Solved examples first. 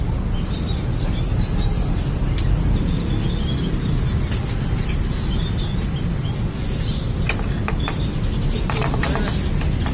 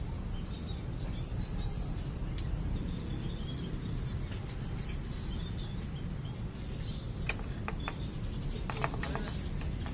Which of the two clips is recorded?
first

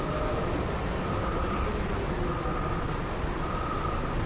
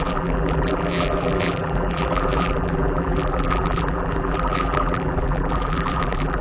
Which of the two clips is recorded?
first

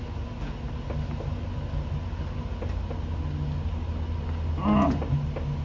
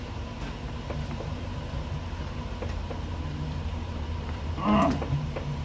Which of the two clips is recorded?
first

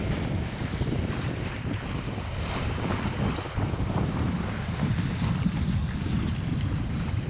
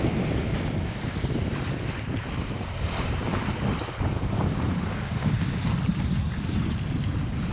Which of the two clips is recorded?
second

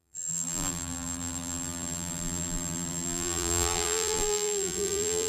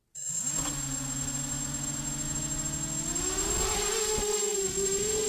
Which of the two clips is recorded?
second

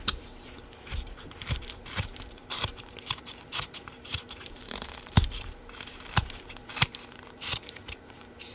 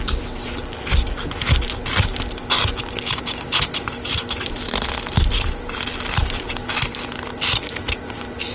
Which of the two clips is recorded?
second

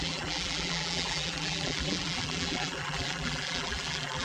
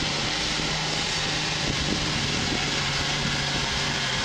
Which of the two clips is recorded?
second